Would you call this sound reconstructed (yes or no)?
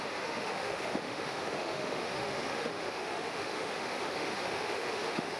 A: yes